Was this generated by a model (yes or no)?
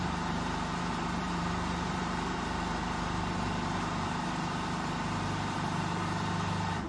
yes